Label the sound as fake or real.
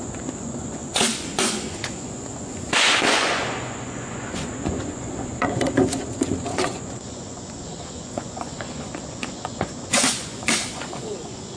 fake